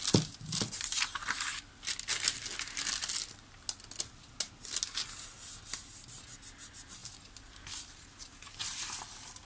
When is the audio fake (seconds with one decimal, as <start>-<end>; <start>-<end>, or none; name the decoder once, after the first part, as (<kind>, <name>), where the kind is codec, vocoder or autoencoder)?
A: none